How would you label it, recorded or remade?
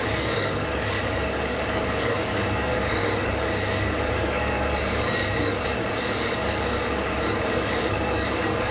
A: remade